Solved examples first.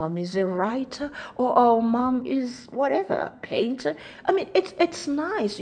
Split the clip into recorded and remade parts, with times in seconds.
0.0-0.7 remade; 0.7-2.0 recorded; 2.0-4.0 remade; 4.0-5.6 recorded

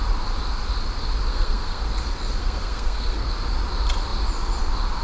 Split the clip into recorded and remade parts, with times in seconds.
0.0-1.3 recorded; 1.3-1.9 remade; 1.9-2.4 recorded; 2.4-3.3 remade; 3.3-5.0 recorded

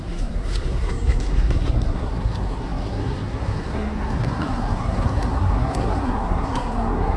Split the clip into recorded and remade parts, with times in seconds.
0.0-7.2 remade

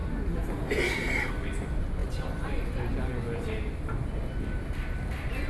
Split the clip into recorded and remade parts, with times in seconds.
0.0-5.5 recorded

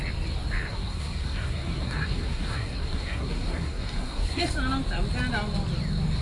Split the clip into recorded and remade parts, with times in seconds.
0.0-0.7 recorded; 0.7-4.4 remade; 4.4-6.2 recorded

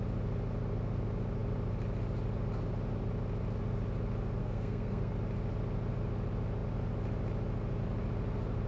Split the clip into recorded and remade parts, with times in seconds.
0.0-4.4 recorded; 4.4-5.1 remade; 5.1-8.7 recorded

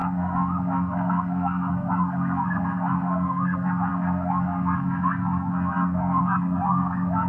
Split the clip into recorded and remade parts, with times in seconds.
0.0-7.3 remade

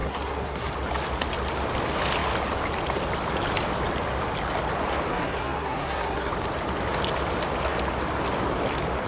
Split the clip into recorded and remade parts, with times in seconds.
0.0-0.7 remade; 0.7-5.1 recorded; 5.1-6.3 remade; 6.3-9.1 recorded